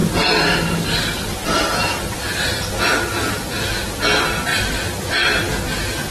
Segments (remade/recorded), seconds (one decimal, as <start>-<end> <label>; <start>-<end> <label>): 0.0-6.1 recorded

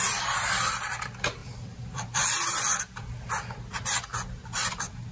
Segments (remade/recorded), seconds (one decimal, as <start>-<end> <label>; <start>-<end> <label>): 0.0-1.4 recorded; 1.4-2.8 remade; 2.8-4.1 recorded; 4.1-5.1 remade

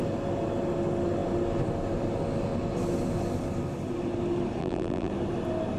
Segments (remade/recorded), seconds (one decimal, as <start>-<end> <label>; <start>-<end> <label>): 0.0-4.6 recorded; 4.6-5.1 remade; 5.1-5.8 recorded